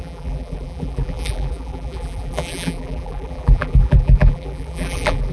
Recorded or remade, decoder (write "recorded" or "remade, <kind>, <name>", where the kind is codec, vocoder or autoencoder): remade, vocoder, BigVGAN v2